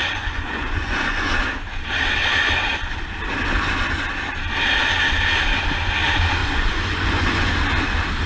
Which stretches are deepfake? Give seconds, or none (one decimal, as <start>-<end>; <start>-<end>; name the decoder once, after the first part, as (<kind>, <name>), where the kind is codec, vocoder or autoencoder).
0.0-1.3 (vocoder, Vocos); 6.4-7.5